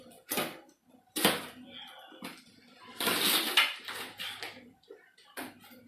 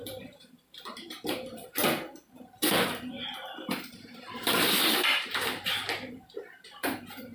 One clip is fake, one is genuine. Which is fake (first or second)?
second